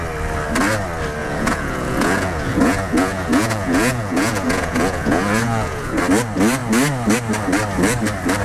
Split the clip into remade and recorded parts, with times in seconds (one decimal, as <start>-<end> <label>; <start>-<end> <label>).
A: 0.0-1.2 recorded; 1.2-6.0 remade; 6.0-8.4 recorded